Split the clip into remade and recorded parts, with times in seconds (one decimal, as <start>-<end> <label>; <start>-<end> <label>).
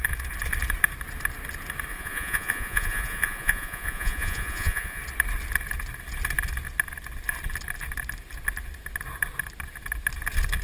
0.0-1.9 recorded; 1.9-5.0 remade; 5.0-10.6 recorded